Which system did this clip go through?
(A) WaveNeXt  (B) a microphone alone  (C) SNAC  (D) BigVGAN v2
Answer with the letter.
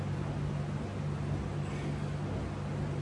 B